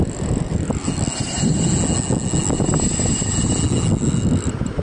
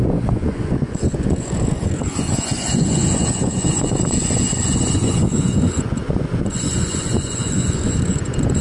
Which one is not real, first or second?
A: second